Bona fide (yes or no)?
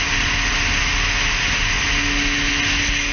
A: yes